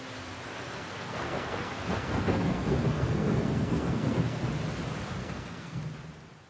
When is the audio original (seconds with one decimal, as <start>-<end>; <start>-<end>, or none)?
0.0-0.5; 4.4-5.2; 5.8-6.5